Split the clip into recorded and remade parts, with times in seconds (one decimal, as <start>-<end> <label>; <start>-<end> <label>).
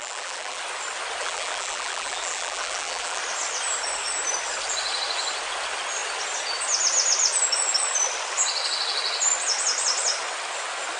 0.0-0.6 remade; 0.6-1.2 recorded; 1.2-3.2 remade; 3.2-11.0 recorded